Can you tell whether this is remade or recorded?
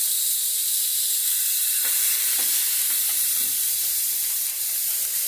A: remade